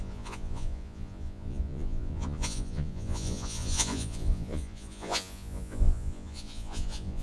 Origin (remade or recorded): remade